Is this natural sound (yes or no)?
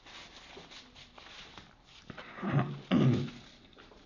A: no